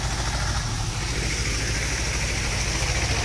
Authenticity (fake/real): real